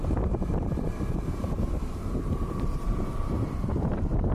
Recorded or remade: remade